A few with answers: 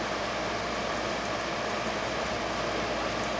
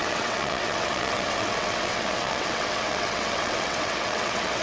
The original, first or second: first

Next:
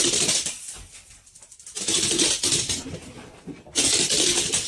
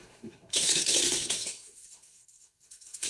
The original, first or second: first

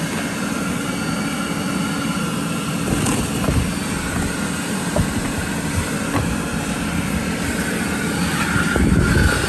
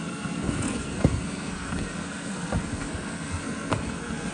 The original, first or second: first